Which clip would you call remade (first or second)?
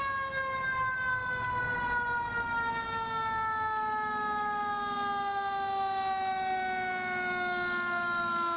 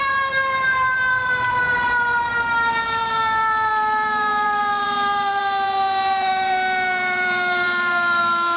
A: second